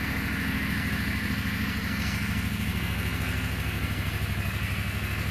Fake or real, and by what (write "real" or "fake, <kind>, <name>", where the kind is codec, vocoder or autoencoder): fake, codec, SNAC